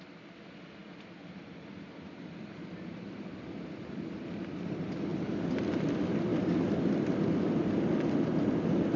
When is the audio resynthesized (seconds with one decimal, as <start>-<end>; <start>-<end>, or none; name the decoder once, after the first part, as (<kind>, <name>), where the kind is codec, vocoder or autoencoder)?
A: 0.8-2.6 (vocoder, BigVGAN v2)